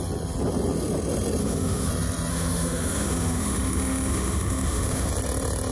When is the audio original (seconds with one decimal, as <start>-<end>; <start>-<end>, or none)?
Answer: 0.0-1.4; 1.9-2.3; 5.1-5.7